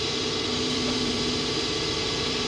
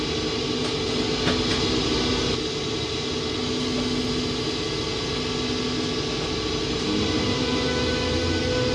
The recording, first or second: second